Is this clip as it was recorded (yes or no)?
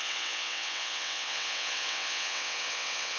no